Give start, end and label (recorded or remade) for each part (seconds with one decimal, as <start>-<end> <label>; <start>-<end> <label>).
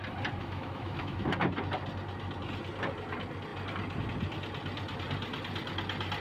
0.0-0.4 recorded; 0.4-1.3 remade; 1.3-6.2 recorded